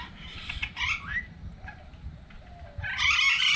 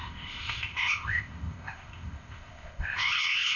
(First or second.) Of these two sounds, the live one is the first